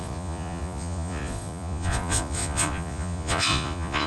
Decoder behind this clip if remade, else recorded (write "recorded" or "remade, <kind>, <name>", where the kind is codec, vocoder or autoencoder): remade, vocoder, Vocos